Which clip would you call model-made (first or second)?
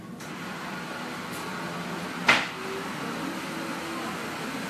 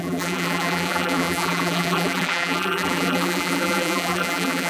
second